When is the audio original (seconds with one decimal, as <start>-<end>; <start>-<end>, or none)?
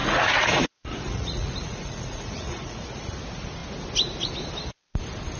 3.2-5.4